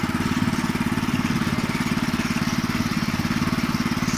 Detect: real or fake real